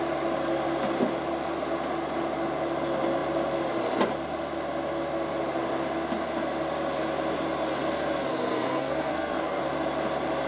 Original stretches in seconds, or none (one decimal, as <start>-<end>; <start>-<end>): 0.0-8.3; 9.6-10.5